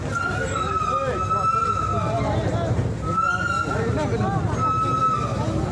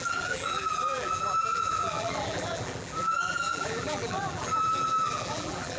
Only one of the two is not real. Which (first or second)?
second